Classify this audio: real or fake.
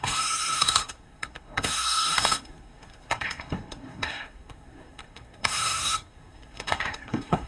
fake